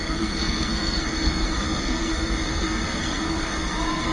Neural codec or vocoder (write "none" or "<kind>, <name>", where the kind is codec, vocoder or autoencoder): codec, SNAC